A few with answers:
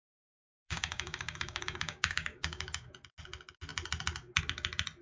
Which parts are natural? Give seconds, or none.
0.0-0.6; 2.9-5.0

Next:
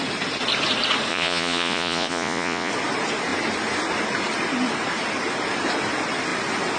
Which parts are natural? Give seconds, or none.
0.0-1.1; 2.7-6.8

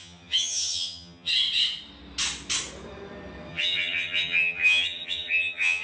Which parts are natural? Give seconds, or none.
1.3-3.5

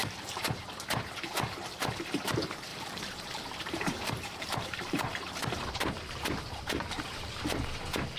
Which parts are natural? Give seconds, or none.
0.5-2.7; 7.4-8.2

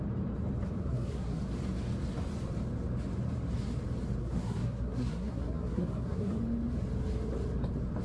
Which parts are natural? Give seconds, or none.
0.0-0.8; 1.4-4.2; 6.4-8.0

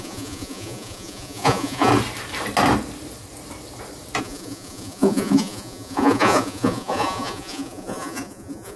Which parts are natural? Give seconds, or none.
1.9-4.2

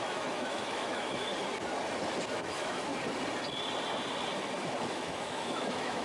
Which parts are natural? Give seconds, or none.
1.3-2.3; 2.9-4.9

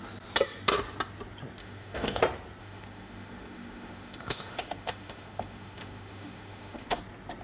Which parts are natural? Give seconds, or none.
0.0-1.6; 2.2-2.6; 7.0-7.4